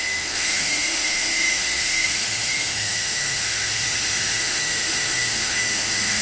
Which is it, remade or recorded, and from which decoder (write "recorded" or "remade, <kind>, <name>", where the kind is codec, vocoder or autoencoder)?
remade, autoencoder, DAC-VAE